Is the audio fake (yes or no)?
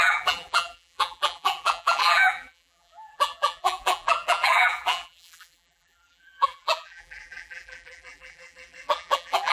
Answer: yes